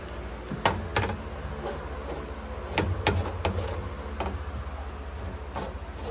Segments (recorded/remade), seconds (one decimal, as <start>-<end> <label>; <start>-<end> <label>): 0.0-6.1 recorded